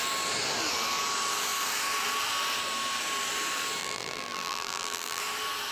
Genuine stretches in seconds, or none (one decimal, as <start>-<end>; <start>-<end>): 0.0-3.8; 5.2-5.7